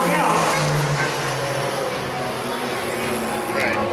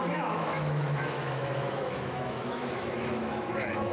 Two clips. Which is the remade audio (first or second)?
second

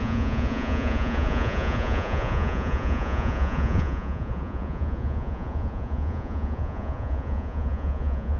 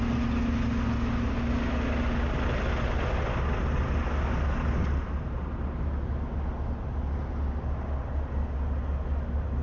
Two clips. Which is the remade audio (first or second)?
first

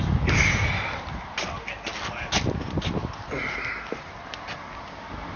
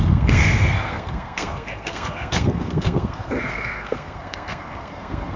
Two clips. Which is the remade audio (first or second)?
second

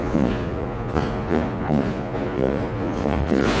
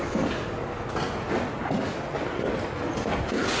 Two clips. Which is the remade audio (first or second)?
first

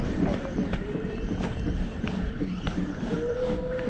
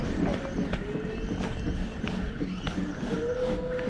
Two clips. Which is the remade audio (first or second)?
first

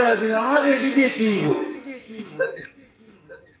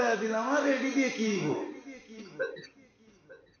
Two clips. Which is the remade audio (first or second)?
first